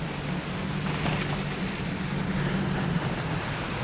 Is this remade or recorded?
recorded